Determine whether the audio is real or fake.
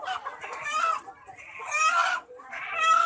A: real